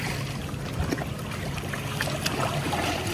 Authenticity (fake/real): real